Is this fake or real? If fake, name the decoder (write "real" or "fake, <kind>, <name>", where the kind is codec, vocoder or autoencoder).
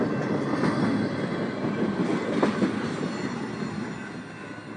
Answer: real